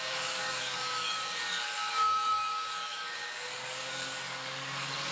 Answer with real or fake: fake